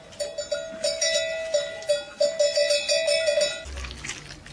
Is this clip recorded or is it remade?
recorded